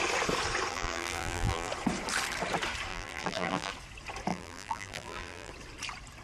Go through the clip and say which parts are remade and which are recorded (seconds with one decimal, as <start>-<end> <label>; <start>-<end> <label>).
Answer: 0.0-0.7 recorded; 0.7-1.7 remade; 1.7-2.9 recorded; 2.9-3.7 remade; 3.7-4.3 recorded; 4.3-5.5 remade; 5.5-6.2 recorded